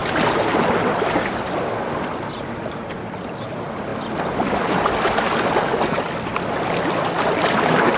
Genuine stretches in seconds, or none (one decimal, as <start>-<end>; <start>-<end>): 0.0-8.0